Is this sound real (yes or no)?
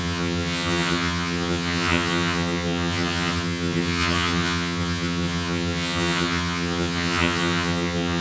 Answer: no